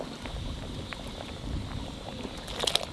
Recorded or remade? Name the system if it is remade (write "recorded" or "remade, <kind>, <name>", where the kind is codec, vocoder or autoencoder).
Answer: recorded